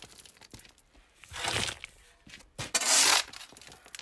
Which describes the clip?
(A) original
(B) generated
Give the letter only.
A